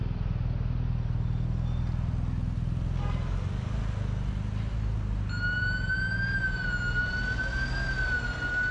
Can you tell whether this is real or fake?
real